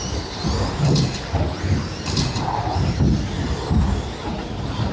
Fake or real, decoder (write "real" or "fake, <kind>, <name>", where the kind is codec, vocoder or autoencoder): real